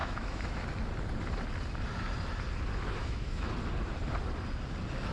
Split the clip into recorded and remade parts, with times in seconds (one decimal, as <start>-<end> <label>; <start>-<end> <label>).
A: 0.0-0.6 remade; 0.6-3.0 recorded; 3.0-3.5 remade; 3.5-5.1 recorded